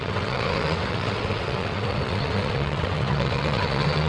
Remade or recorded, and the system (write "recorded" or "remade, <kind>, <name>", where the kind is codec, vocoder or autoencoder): remade, vocoder, WaveNeXt